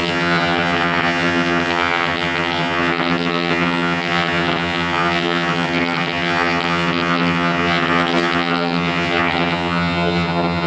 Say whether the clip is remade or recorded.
remade